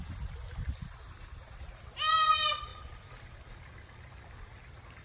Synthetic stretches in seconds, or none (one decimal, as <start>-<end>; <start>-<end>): 2.7-4.1